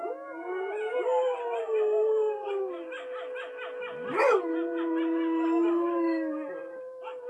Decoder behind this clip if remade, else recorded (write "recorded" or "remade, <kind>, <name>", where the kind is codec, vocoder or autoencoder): recorded